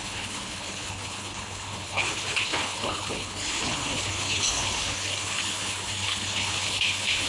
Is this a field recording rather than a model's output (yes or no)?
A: no